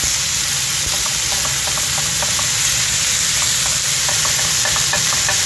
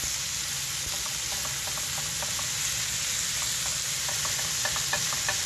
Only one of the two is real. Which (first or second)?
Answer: second